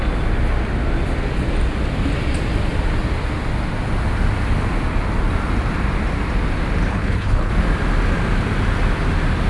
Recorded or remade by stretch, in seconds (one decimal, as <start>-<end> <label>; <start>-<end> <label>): 0.0-6.9 recorded; 6.9-7.5 remade; 7.5-9.5 recorded